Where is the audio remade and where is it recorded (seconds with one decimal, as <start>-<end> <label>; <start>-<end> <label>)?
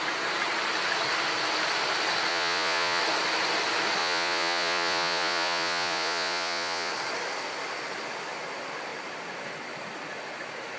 0.0-2.3 recorded; 2.3-3.0 remade; 3.0-4.0 recorded; 4.0-6.9 remade; 6.9-10.8 recorded